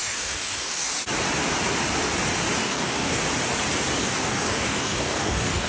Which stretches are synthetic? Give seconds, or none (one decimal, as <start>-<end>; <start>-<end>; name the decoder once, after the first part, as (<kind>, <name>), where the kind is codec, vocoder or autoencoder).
0.0-0.9 (codec, DAC); 2.6-3.2; 4.0-5.7